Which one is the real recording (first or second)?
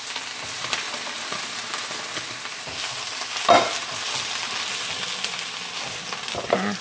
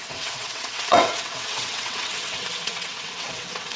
first